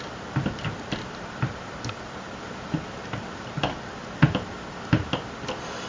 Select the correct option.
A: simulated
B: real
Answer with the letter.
A